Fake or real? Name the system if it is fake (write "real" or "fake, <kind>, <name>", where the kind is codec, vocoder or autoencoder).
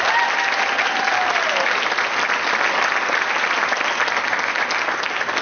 real